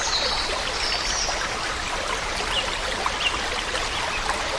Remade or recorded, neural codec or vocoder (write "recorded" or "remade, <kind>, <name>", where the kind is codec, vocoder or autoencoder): recorded